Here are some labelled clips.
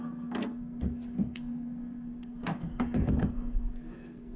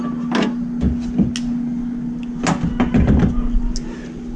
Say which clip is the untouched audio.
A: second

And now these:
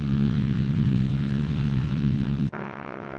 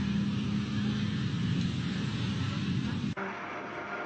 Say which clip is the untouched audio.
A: second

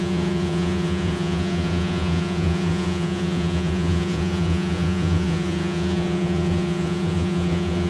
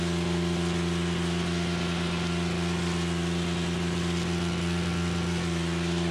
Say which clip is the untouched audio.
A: second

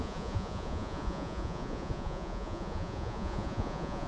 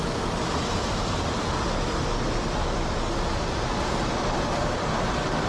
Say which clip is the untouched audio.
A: second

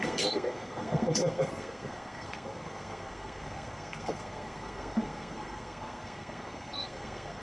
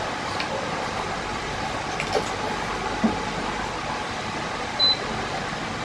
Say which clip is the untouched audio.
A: second